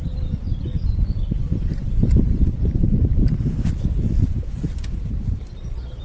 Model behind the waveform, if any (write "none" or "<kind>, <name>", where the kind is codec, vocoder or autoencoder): vocoder, BigVGAN v2